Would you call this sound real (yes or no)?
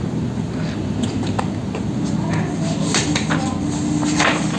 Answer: yes